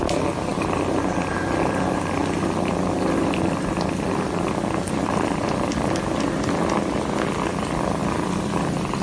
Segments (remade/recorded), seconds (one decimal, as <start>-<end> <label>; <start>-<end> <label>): 0.0-0.5 recorded; 0.5-5.7 remade; 5.7-9.0 recorded